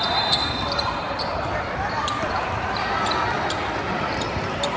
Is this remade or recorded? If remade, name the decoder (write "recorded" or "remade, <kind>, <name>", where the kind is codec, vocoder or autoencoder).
remade, vocoder, BigVGAN v2